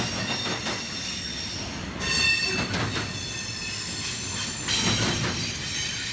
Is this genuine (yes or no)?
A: yes